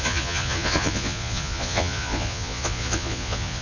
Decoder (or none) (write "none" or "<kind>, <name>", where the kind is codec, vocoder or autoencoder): vocoder, Vocos